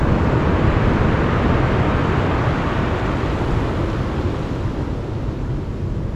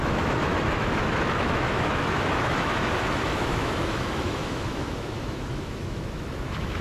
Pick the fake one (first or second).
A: second